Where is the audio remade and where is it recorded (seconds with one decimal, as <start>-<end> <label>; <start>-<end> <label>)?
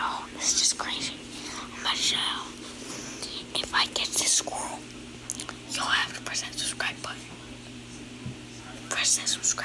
0.0-9.6 recorded